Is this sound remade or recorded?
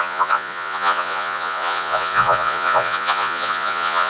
remade